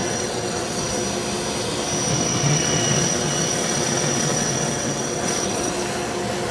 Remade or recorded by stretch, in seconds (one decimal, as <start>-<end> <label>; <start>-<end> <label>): 0.0-0.9 remade; 0.9-2.1 recorded; 2.1-5.7 remade; 5.7-6.5 recorded